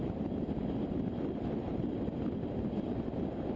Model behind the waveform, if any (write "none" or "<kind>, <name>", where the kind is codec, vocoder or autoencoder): none